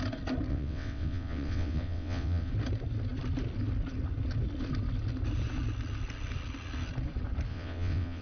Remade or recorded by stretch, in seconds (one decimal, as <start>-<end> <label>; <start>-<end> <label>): 0.0-0.5 recorded; 0.5-2.5 remade; 2.5-7.5 recorded; 7.5-8.2 remade